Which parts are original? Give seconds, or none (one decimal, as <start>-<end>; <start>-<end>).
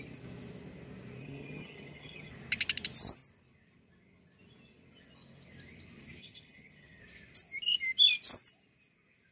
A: 0.0-1.2; 2.3-6.2; 7.0-9.3